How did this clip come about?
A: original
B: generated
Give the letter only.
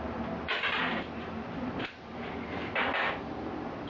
A